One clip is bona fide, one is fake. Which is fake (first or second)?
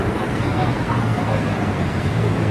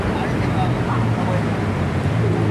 first